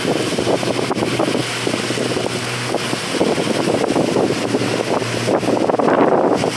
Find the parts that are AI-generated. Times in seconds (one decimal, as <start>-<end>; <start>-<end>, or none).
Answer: none